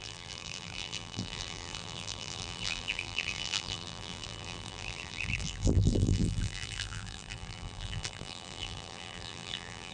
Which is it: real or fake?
fake